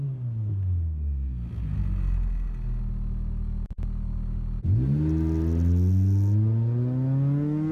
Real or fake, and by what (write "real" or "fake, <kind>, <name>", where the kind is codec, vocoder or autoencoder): real